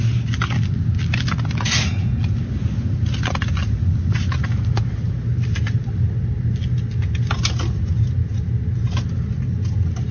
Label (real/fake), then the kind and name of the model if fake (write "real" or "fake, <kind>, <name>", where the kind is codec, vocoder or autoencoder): real